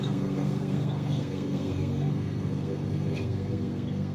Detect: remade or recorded remade